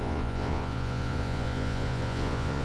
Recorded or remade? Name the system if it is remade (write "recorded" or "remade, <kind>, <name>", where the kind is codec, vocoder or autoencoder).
remade, vocoder, Vocos